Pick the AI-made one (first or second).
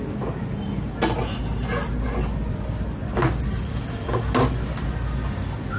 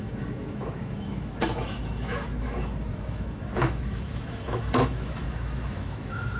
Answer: second